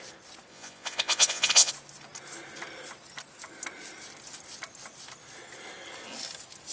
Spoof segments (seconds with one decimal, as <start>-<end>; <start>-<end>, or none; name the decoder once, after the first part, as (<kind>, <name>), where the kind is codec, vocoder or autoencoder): 0.5-1.7 (vocoder, Vocos)